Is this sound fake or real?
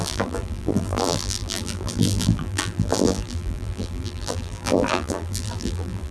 fake